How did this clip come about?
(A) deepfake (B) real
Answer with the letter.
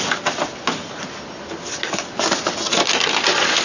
B